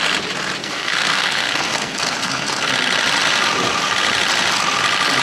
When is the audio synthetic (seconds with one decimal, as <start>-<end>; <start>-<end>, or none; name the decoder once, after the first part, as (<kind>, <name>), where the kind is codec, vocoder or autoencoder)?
0.6-2.7 (codec, SNAC)

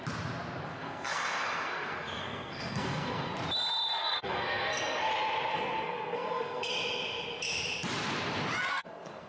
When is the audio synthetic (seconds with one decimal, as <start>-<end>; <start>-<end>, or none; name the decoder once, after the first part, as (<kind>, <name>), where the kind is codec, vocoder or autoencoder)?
0.7-3.3 (codec, SNAC); 4.0-5.1; 5.5-6.7; 8.7-9.3

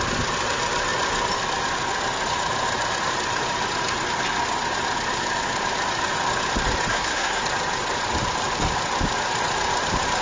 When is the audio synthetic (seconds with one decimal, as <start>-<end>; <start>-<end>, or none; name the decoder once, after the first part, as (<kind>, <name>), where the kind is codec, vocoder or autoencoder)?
6.9-7.4 (codec, SNAC)

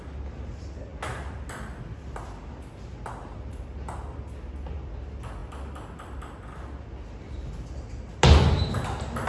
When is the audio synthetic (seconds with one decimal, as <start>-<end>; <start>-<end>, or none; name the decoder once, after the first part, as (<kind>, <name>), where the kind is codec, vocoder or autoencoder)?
none

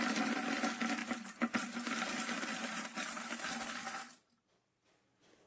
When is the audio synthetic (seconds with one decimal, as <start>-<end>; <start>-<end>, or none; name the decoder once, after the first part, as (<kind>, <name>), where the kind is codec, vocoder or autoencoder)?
none

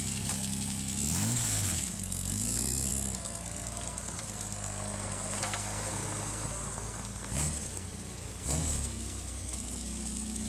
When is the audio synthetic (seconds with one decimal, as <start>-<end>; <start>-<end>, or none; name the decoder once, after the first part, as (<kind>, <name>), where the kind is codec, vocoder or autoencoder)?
0.0-10.5 (codec, SNAC)

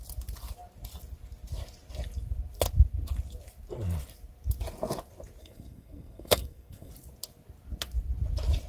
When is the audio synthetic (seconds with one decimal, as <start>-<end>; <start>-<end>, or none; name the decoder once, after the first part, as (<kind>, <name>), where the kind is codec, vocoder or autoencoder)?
5.4-6.9 (codec, SNAC)

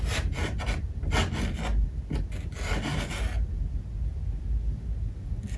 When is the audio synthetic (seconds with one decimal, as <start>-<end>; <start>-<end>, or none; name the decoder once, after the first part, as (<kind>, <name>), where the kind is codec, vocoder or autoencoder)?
none